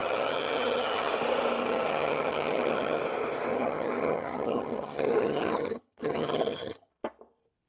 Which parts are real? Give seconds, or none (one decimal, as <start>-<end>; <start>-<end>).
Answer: 1.1-1.6; 3.0-3.5; 6.9-7.7